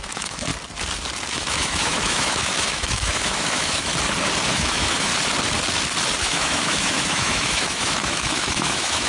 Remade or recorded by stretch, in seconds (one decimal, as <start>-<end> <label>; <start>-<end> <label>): 0.0-0.5 remade; 0.5-1.3 recorded; 1.3-3.9 remade; 3.9-4.5 recorded; 4.5-5.1 remade; 5.1-6.2 recorded; 6.2-9.1 remade